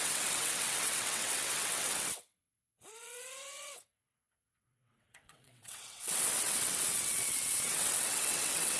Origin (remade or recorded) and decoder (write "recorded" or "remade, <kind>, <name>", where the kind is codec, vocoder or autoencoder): remade, vocoder, WaveNeXt